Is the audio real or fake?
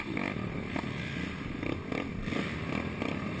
real